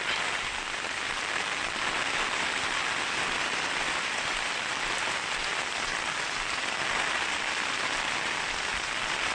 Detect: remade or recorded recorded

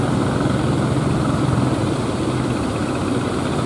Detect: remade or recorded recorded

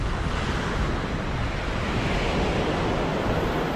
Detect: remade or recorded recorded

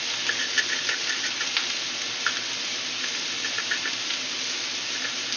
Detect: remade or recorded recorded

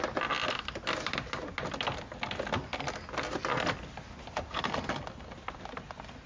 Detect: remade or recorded recorded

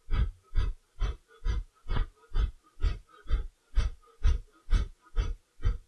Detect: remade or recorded recorded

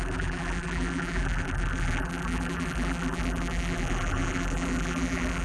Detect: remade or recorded remade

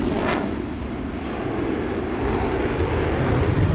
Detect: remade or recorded remade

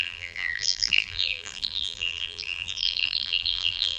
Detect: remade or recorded remade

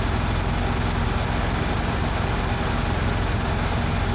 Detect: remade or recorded recorded